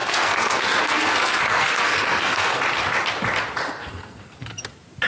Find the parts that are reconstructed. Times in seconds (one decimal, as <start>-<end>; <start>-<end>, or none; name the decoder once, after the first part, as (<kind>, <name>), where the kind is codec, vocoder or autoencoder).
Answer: 0.0-2.6 (codec, SNAC); 3.8-4.6